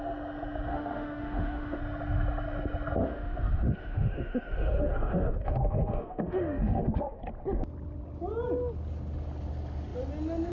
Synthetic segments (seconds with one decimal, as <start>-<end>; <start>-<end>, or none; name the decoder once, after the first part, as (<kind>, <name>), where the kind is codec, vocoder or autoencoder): 0.7-1.8 (autoencoder, DAC-VAE); 3.0-7.2